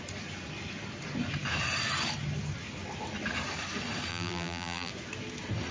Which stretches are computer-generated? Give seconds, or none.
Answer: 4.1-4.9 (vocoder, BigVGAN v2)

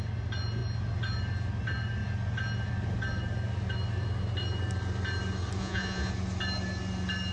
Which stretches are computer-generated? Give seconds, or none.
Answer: 5.6-6.1 (vocoder, Vocos)

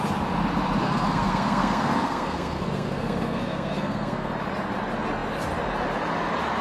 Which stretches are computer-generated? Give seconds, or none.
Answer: 0.8-4.3 (codec, SNAC)

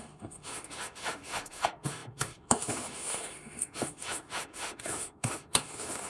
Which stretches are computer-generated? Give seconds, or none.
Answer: 0.0-6.1 (autoencoder, DAC-VAE)